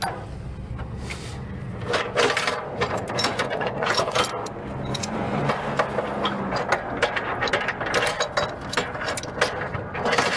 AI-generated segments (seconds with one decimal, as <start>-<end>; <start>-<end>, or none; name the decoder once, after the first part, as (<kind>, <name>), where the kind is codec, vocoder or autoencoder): 3.3-4.2 (vocoder, Vocos); 4.9-5.5